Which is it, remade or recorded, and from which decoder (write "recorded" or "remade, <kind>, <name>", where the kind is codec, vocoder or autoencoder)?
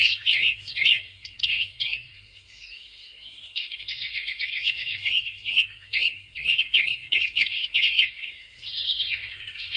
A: remade, codec, SNAC